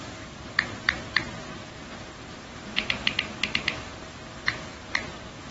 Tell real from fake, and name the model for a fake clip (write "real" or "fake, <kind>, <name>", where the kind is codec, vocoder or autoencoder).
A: fake, vocoder, BigVGAN v2